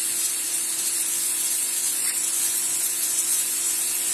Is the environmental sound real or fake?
fake